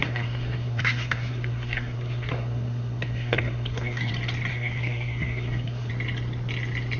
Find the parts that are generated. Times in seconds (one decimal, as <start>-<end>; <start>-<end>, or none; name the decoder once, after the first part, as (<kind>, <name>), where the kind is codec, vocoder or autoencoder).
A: 0.0-4.1 (codec, SNAC); 4.5-5.9